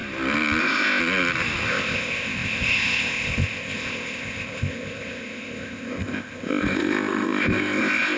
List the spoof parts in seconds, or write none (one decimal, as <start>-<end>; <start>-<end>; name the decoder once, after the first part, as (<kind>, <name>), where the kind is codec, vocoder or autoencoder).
0.6-1.0 (codec, ZipCodec); 1.7-8.2